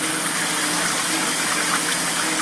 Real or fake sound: real